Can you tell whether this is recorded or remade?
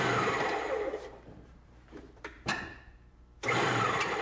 remade